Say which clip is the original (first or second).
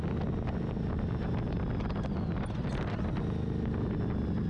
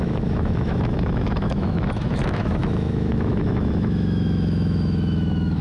first